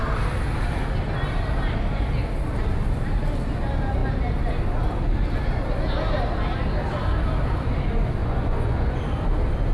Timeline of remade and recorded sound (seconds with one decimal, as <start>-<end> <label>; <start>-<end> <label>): 0.0-8.2 recorded; 8.2-9.0 remade; 9.0-9.7 recorded